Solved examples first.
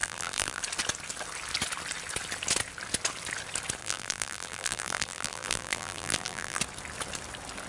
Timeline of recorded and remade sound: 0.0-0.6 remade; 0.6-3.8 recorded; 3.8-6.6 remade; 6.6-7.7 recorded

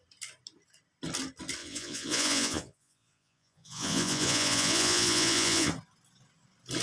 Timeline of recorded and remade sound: 0.0-1.6 recorded; 1.6-5.7 remade; 5.7-6.8 recorded